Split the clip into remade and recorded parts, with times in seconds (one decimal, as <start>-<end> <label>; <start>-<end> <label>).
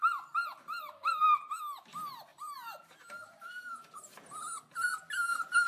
0.0-1.2 remade; 1.2-2.3 recorded; 2.3-4.9 remade; 4.9-5.7 recorded